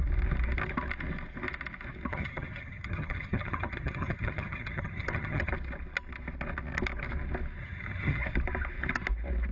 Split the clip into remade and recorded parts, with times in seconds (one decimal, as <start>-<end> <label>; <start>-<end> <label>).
0.0-2.1 recorded; 2.1-5.5 remade; 5.5-7.6 recorded; 7.6-8.2 remade; 8.2-9.5 recorded